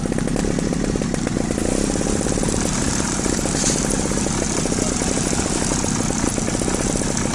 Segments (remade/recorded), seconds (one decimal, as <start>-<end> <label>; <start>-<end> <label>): 0.0-0.4 recorded; 0.4-4.6 remade; 4.6-7.3 recorded